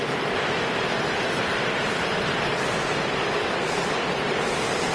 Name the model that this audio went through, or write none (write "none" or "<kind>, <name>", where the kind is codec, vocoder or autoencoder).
none